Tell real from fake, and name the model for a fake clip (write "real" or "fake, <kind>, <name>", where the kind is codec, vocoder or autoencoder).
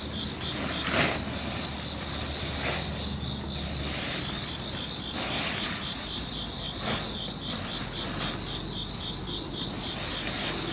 real